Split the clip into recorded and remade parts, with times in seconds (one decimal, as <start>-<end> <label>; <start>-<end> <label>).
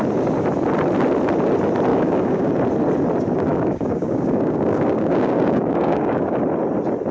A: 0.0-1.9 recorded; 1.9-2.5 remade; 2.5-3.5 recorded; 3.5-6.4 remade; 6.4-7.1 recorded